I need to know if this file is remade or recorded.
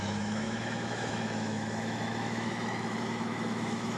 remade